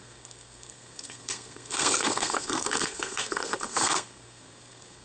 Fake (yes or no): yes